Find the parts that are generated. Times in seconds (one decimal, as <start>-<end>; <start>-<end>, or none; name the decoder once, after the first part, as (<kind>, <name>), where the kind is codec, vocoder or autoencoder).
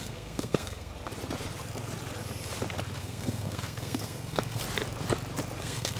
0.0-0.9 (codec, SNAC); 3.0-4.6; 5.6-6.0